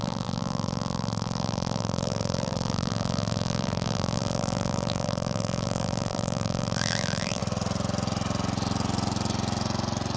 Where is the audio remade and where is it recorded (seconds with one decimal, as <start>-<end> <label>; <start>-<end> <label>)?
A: 0.0-7.4 remade; 7.4-10.2 recorded